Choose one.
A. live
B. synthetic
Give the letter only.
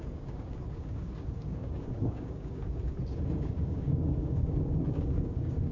B